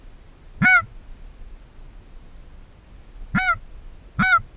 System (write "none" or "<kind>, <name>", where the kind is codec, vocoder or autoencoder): none